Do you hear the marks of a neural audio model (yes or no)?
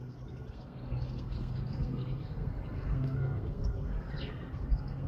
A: yes